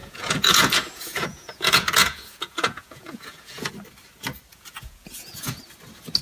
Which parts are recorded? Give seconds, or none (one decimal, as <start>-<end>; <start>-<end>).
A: 3.7-4.5; 5.6-6.2